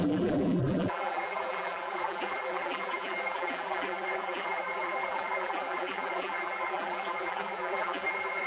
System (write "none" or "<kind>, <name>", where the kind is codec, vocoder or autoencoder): vocoder, BigVGAN v2